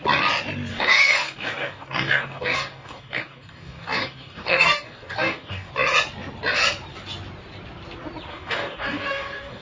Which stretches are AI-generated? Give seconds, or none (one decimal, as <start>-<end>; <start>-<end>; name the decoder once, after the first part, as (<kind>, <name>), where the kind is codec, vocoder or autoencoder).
0.7-5.7 (codec, DAC); 8.3-9.6